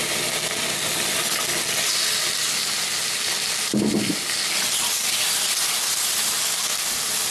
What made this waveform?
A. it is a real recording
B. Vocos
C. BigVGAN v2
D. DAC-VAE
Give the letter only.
A